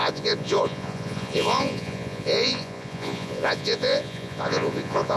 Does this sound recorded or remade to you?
remade